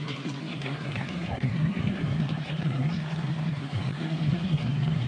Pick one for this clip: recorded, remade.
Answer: remade